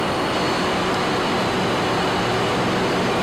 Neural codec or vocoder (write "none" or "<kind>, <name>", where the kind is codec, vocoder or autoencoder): none